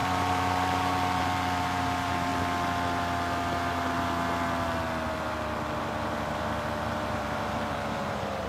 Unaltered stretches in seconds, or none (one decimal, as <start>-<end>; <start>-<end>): 2.3-5.8